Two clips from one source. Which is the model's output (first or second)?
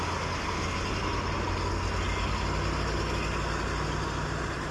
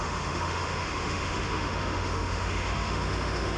second